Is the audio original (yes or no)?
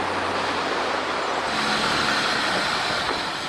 yes